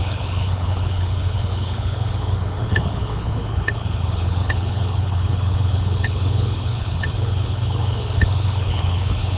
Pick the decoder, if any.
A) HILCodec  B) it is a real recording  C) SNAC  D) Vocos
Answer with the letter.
A